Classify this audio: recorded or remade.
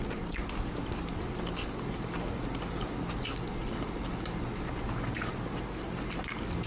recorded